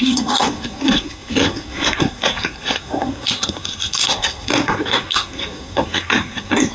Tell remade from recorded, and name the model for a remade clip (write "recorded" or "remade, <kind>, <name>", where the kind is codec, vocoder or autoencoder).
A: remade, codec, SNAC